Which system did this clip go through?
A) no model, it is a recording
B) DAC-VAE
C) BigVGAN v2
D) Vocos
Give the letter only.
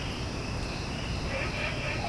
A